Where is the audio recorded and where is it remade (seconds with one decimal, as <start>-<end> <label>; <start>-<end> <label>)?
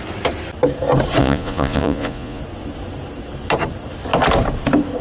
0.0-1.2 recorded; 1.2-2.4 remade; 2.4-5.0 recorded